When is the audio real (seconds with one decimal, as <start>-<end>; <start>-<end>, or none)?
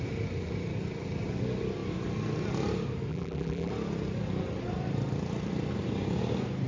0.0-3.1; 3.7-6.7